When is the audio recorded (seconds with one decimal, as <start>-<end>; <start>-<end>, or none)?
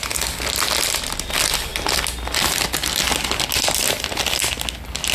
0.0-5.1